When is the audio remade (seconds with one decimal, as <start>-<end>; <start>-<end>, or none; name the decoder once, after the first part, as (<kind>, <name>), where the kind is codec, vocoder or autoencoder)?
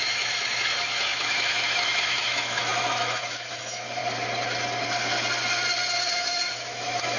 0.0-4.0 (autoencoder, DAC-VAE); 6.1-7.2